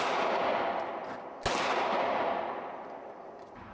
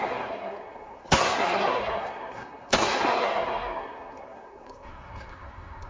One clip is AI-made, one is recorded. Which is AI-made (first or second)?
second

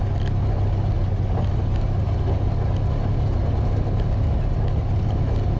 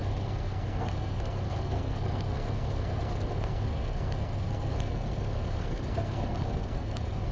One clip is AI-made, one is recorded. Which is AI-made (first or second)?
second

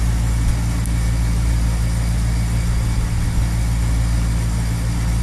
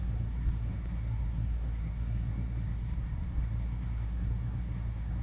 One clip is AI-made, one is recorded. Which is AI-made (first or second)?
second